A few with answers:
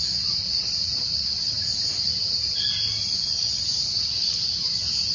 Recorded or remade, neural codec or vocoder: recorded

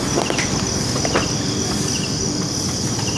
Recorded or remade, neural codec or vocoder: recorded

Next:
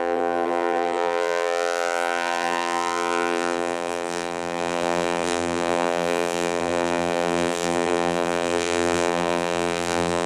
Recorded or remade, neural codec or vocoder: remade, vocoder, BigVGAN v2